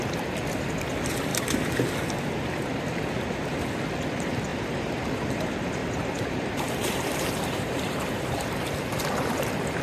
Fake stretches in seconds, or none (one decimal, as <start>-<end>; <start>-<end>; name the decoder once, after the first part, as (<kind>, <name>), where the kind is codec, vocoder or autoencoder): 4.5-5.0 (vocoder, BigVGAN v2); 5.8-8.9